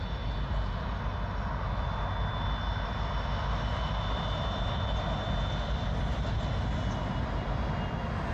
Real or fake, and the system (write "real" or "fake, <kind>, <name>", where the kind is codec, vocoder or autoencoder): real